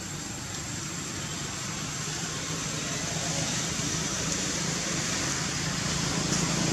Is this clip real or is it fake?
fake